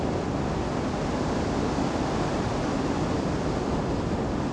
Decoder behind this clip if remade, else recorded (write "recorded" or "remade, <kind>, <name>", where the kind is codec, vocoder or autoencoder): recorded